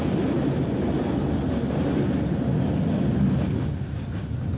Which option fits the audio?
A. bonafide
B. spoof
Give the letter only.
A